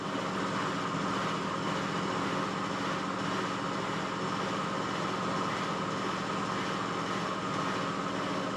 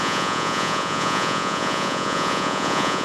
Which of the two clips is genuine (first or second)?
first